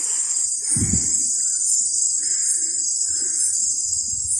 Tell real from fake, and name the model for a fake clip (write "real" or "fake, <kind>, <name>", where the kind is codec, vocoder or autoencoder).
real